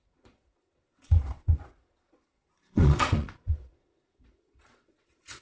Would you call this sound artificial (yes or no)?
yes